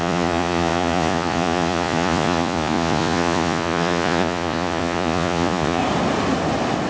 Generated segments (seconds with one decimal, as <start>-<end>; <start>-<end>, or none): 0.0-5.8